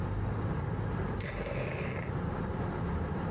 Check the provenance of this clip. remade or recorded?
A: recorded